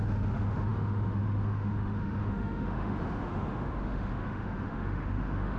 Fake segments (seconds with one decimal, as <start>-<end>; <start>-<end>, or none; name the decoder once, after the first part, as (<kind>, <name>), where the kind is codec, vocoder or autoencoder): 0.0-5.6 (autoencoder, DAC-VAE)